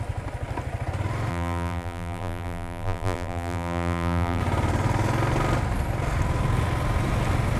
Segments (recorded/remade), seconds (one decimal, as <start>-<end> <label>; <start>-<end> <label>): 0.0-1.3 recorded; 1.3-4.4 remade; 4.4-7.6 recorded